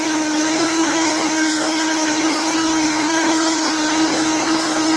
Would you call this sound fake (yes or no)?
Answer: yes